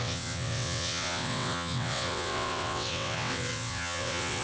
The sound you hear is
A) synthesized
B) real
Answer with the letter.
A